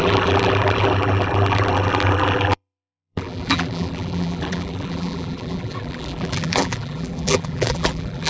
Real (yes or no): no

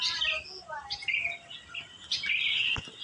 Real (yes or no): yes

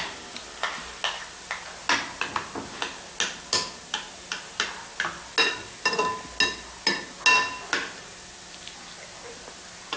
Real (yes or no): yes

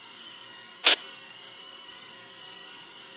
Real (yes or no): no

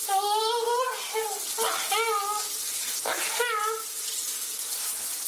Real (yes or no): yes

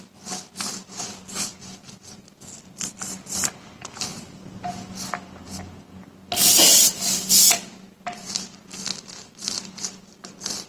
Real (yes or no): yes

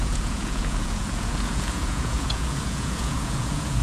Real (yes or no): no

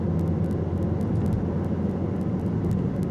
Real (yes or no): yes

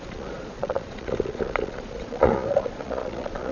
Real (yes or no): no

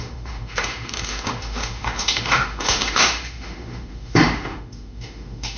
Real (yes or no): no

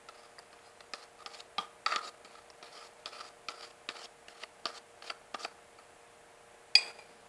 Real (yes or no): yes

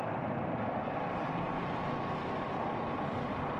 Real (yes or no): yes